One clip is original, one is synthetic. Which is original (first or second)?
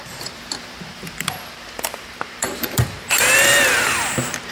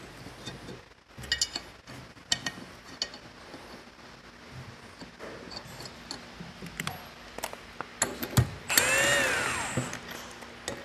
second